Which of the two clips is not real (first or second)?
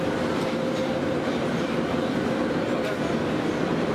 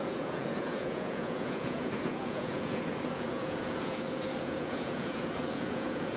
second